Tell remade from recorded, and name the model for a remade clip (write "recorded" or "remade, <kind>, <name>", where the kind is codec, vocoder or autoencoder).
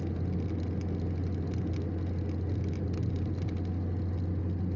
recorded